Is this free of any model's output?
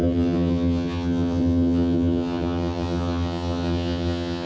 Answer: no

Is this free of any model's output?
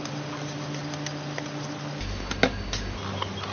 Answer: yes